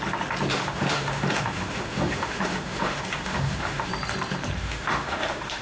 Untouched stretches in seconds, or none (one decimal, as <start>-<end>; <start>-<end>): 0.0-0.5; 3.9-4.6

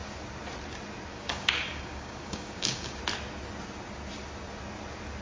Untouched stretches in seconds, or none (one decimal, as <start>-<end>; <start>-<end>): 0.0-1.1; 3.0-5.2

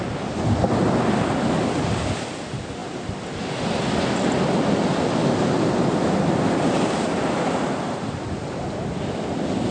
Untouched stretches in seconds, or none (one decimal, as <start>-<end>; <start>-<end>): 0.0-9.7